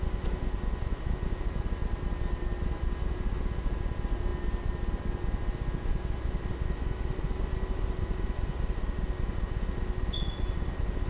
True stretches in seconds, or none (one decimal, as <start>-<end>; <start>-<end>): 0.0-11.1